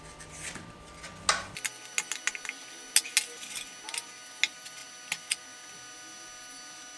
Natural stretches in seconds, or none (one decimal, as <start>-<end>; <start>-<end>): 0.0-7.0